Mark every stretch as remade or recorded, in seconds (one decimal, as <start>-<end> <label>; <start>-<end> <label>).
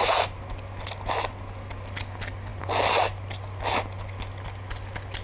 0.0-5.2 recorded